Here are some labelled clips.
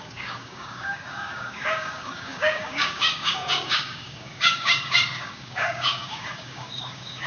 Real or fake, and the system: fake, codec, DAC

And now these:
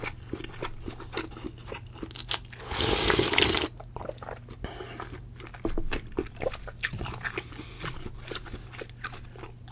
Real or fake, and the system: real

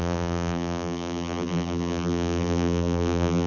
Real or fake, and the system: fake, vocoder, BigVGAN v2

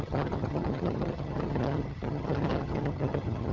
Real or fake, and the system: fake, vocoder, HiFi-GAN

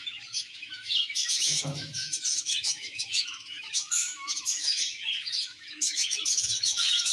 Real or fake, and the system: fake, autoencoder, DAC-VAE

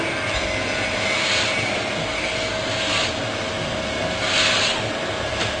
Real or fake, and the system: real